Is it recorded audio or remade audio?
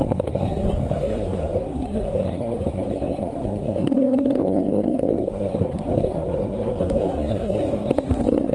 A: remade